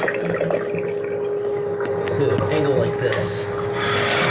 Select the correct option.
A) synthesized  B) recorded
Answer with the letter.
B